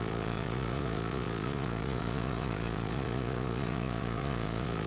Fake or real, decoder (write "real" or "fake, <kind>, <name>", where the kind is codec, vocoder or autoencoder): fake, vocoder, Vocos